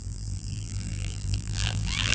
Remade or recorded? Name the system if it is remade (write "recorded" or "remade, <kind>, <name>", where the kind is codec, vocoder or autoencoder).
remade, vocoder, BigVGAN v2